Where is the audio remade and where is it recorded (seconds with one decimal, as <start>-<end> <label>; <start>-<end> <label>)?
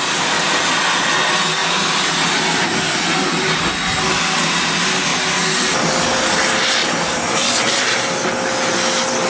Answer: 0.0-6.8 recorded; 6.8-8.1 remade; 8.1-9.3 recorded